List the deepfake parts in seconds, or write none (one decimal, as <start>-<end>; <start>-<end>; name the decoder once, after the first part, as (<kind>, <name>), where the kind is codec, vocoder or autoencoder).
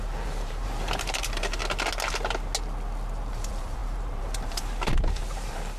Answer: 0.0-1.6 (vocoder, BigVGAN v2); 3.3-5.8